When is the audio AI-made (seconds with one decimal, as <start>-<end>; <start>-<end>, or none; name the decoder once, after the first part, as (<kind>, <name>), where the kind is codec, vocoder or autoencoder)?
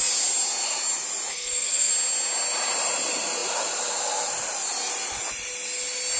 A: 1.3-1.9 (codec, SNAC)